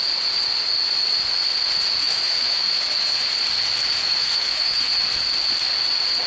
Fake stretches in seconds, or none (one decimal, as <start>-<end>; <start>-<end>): 2.0-2.8; 4.0-4.9